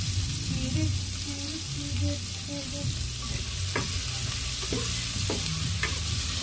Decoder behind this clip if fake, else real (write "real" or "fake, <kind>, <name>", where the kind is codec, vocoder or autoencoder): real